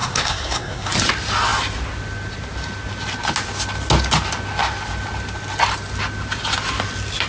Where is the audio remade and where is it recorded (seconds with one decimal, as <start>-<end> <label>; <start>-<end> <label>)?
0.0-0.9 remade; 0.9-7.3 recorded